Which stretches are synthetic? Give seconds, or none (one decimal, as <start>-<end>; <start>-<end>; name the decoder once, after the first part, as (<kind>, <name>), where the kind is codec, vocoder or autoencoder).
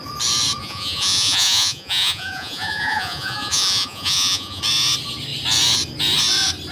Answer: 0.6-4.6 (vocoder, Vocos)